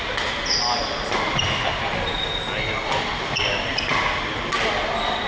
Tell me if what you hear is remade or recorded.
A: recorded